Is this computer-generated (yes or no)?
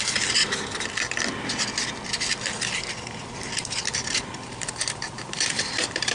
yes